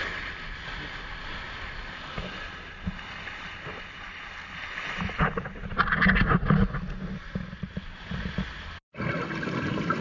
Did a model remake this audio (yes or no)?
no